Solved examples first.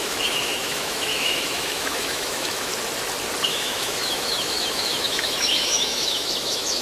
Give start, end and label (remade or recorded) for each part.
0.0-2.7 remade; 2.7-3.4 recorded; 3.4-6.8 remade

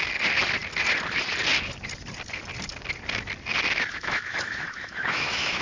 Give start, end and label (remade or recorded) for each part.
0.0-3.9 recorded; 3.9-5.6 remade

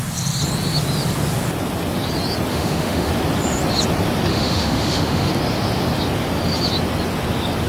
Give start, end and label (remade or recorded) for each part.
0.0-2.5 recorded; 2.5-3.1 remade; 3.1-4.3 recorded; 4.3-5.3 remade; 5.3-7.7 recorded

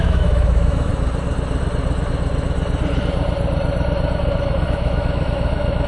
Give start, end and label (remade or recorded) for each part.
0.0-0.9 remade; 0.9-4.4 recorded; 4.4-5.9 remade